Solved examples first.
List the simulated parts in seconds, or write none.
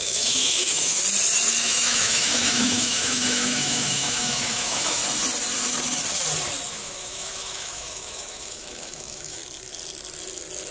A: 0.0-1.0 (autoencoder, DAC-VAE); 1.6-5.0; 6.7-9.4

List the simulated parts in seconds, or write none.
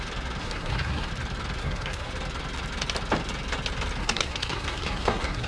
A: 0.4-1.1 (codec, SNAC); 1.6-2.1; 4.0-5.5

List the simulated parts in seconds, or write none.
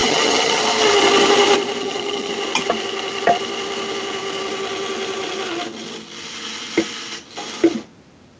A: 0.0-0.6 (vocoder, HiFi-GAN); 1.8-2.3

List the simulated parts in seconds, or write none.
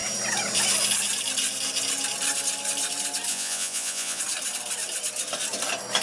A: 3.3-4.2 (vocoder, Vocos)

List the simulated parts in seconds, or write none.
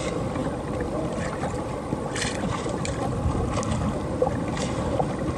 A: 0.4-3.6 (vocoder, BigVGAN v2)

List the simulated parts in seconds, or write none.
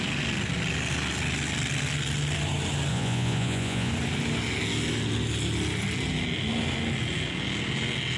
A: 2.9-3.9 (vocoder, Vocos)